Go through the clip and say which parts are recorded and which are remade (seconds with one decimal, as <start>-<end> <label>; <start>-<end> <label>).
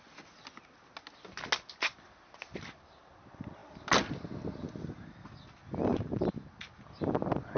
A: 0.0-7.6 recorded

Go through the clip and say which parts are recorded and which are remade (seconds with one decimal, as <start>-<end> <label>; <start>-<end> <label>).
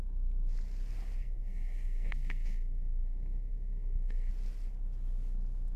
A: 0.0-1.2 recorded; 1.2-4.3 remade; 4.3-5.8 recorded